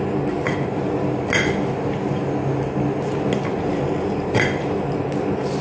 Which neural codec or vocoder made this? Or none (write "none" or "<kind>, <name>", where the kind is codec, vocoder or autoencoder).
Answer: none